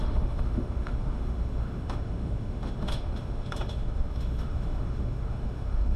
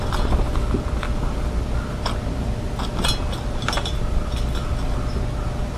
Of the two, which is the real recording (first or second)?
second